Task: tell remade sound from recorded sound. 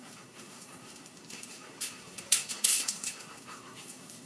remade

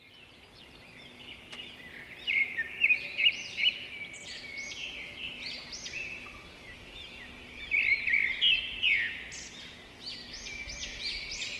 recorded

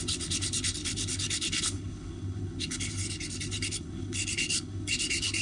remade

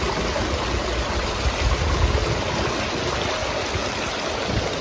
recorded